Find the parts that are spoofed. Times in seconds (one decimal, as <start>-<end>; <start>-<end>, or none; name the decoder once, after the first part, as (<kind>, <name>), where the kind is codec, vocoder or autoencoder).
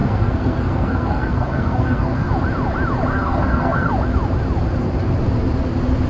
0.0-2.3 (codec, SNAC); 3.1-3.9